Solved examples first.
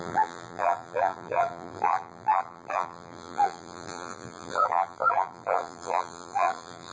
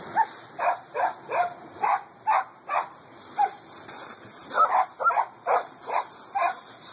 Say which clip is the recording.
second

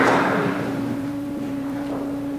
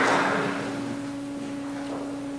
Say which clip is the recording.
second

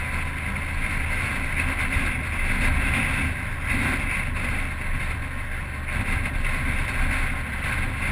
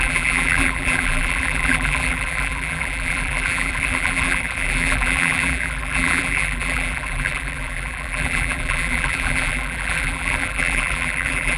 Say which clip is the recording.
first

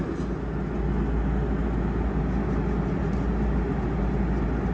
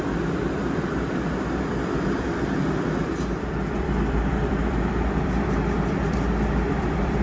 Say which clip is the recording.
first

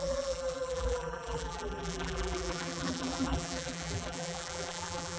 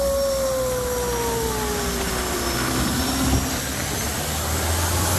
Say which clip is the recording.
second